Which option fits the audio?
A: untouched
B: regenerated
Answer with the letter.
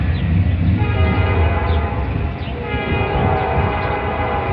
A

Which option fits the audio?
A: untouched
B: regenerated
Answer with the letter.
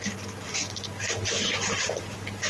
A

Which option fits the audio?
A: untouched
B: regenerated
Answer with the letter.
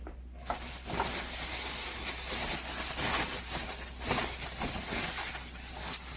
A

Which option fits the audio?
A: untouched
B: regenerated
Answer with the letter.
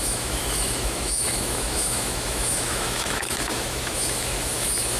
B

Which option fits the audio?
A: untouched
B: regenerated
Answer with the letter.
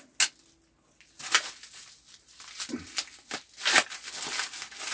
A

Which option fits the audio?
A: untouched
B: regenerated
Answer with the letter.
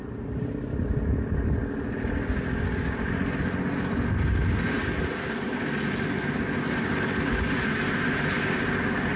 A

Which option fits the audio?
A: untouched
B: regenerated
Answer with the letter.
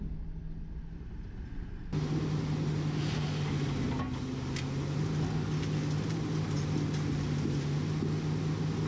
A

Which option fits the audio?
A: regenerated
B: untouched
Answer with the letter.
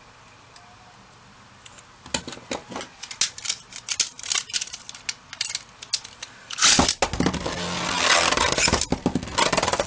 B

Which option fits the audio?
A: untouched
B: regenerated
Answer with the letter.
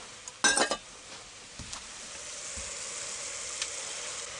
A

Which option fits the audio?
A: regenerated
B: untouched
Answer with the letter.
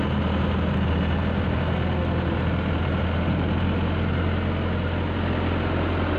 B